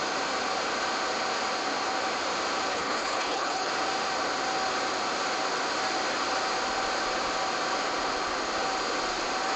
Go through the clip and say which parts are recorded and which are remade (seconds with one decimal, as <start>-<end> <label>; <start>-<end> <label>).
0.0-2.7 recorded; 2.7-3.7 remade; 3.7-9.6 recorded